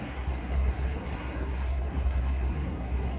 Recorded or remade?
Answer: remade